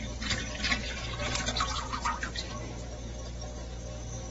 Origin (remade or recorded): recorded